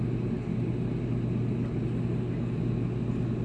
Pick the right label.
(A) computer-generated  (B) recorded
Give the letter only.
B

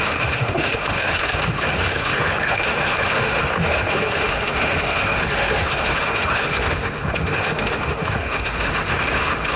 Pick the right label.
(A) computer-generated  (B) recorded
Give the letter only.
A